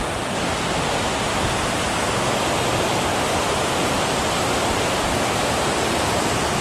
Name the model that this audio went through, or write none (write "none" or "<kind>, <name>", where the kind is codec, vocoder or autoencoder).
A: none